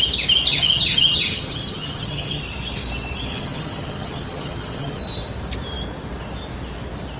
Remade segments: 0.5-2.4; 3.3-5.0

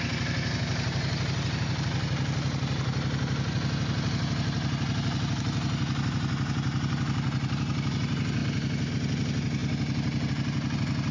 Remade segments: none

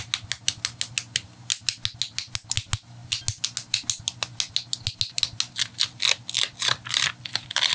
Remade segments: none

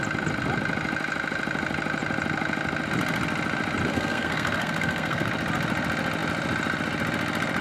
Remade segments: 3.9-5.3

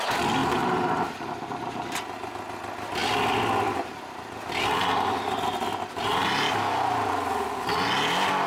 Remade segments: 0.4-2.3; 6.0-7.1

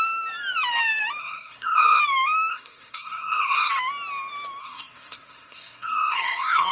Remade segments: 1.2-2.0; 2.5-3.7; 4.6-6.7